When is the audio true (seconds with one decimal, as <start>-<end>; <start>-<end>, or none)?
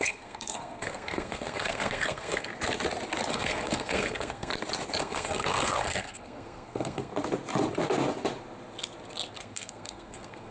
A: 2.5-3.3; 4.5-5.0; 7.1-9.3